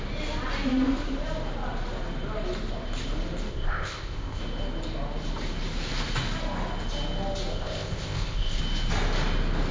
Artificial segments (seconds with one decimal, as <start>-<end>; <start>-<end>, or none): 3.5-4.4; 7.5-8.6

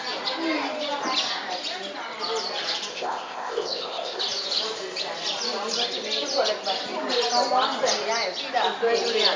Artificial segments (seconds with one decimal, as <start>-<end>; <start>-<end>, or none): 2.9-4.2